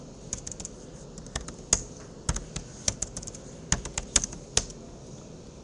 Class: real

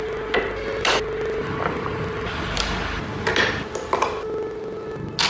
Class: real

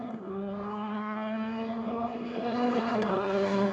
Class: fake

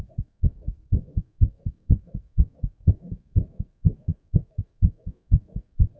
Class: fake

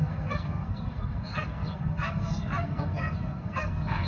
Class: fake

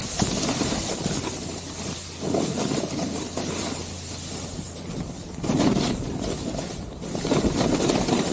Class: real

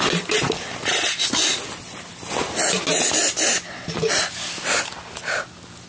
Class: real